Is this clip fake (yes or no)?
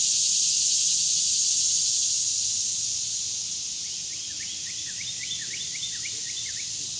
no